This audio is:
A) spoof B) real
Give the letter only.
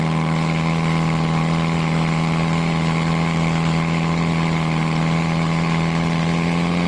B